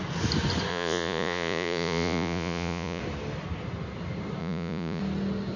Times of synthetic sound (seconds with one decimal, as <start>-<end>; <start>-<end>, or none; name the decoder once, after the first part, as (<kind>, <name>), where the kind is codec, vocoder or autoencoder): 0.7-3.0 (vocoder, Vocos); 4.4-5.0